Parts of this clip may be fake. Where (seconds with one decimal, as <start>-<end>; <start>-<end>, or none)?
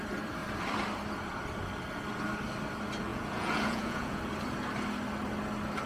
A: 3.1-4.2